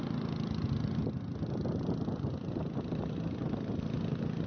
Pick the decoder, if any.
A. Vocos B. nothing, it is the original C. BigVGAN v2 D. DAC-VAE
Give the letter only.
B